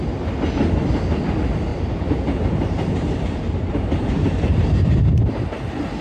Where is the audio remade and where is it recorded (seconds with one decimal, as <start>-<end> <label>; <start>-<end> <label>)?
0.0-1.7 recorded; 1.7-5.3 remade; 5.3-6.0 recorded